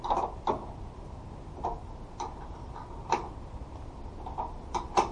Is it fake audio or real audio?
fake